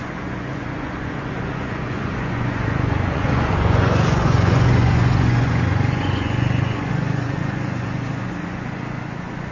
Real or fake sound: fake